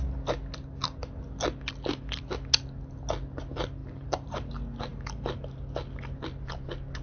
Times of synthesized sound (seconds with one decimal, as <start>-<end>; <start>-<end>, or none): 3.8-4.5; 4.9-5.4